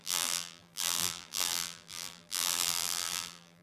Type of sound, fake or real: fake